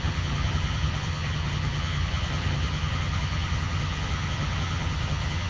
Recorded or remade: remade